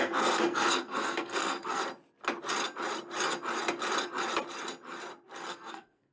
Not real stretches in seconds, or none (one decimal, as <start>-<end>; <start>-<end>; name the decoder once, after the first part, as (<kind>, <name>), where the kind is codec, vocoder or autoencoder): 0.0-1.8 (codec, SNAC); 5.5-6.1